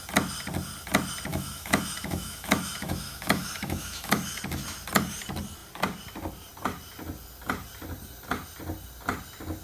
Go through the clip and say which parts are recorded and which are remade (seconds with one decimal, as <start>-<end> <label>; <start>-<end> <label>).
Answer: 0.0-1.3 recorded; 1.3-4.4 remade; 4.4-9.6 recorded